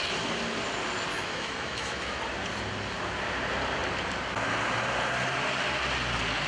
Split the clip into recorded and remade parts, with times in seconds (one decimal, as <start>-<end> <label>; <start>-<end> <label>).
0.0-1.1 recorded; 1.1-2.2 remade; 2.2-6.5 recorded